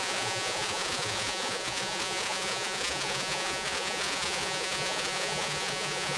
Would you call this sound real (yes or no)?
no